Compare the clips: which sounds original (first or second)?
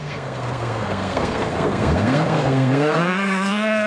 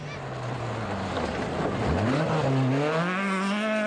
second